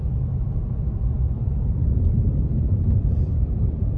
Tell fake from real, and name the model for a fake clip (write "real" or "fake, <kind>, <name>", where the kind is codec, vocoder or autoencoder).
fake, vocoder, BigVGAN v2